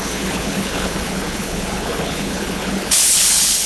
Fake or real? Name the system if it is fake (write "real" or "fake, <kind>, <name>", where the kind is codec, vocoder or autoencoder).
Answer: fake, codec, HILCodec